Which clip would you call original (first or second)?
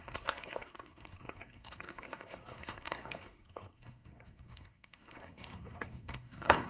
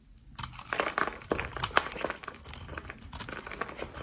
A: second